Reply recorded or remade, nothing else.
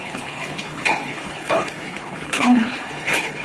remade